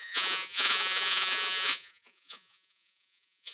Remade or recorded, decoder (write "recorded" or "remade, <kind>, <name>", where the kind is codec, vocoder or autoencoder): remade, vocoder, Vocos